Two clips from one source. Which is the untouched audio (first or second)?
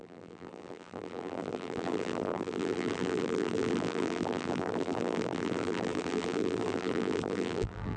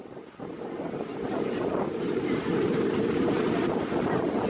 second